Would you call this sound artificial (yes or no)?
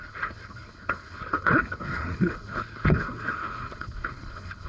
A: yes